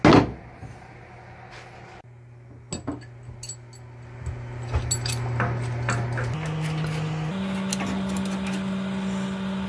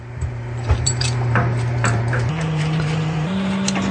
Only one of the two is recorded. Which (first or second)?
first